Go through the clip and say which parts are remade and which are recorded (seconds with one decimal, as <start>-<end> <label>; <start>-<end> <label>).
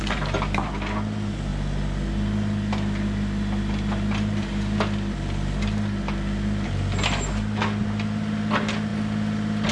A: 0.0-9.7 recorded